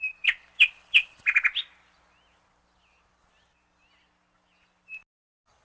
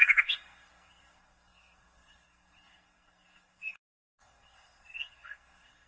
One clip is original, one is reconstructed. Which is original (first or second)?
first